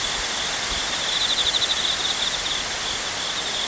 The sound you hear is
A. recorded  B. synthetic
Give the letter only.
A